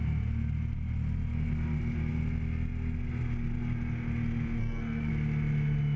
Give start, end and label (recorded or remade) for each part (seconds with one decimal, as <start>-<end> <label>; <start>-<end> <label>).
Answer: 0.0-4.6 recorded; 4.6-5.1 remade; 5.1-6.0 recorded